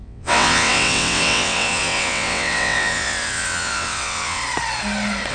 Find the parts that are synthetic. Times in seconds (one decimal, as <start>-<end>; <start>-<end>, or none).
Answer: 0.0-4.4